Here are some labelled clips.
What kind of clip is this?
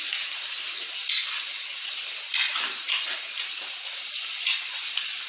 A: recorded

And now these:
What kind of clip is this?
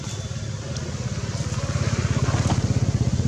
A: recorded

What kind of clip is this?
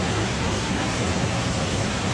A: remade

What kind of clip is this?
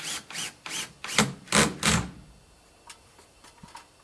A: recorded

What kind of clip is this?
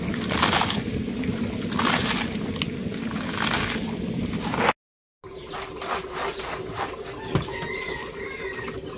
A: recorded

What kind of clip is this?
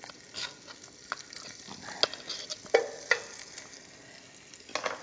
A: recorded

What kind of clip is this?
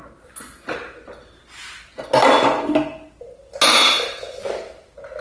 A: recorded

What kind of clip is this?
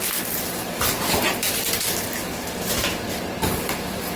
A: recorded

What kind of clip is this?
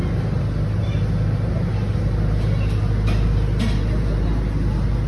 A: recorded